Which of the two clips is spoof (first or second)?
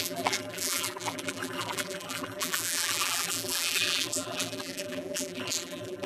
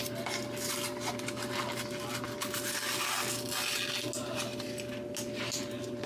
first